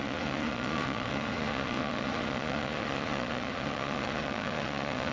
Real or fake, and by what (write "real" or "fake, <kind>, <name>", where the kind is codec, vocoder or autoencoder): fake, vocoder, Vocos